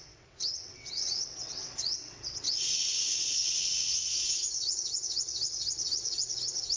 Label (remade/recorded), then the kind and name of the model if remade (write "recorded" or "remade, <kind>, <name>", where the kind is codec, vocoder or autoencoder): remade, vocoder, WaveNeXt